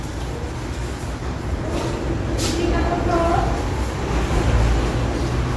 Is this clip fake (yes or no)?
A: no